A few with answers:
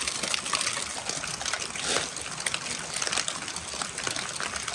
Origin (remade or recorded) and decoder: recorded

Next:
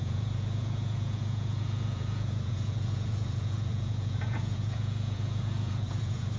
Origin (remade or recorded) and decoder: remade, vocoder, Vocos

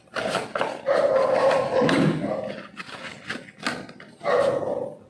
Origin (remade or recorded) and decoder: recorded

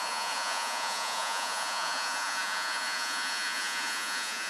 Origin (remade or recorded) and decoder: remade, vocoder, Vocos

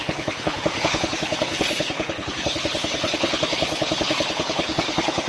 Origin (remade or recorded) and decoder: remade, codec, HILCodec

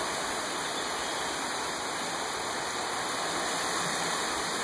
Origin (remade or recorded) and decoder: recorded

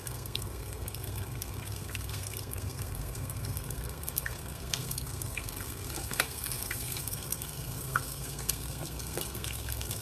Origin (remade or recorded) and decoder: remade, codec, SNAC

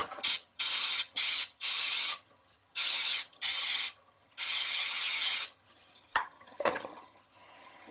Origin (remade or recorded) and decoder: remade, vocoder, HiFi-GAN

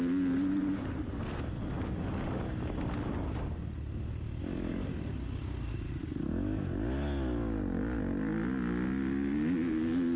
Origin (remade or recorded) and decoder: recorded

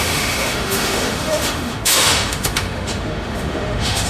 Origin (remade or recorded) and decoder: remade, autoencoder, DAC-VAE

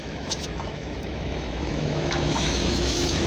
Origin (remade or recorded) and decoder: remade, autoencoder, DAC-VAE